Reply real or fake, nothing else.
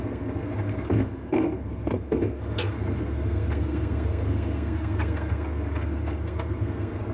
fake